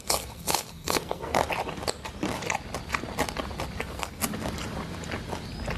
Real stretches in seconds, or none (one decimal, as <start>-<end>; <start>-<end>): 1.4-3.8; 4.2-5.8